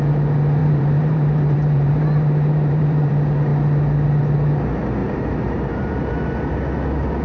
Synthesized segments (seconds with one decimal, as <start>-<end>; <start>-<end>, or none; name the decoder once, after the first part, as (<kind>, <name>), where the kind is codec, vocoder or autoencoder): 0.6-3.1 (vocoder, BigVGAN v2); 5.0-6.1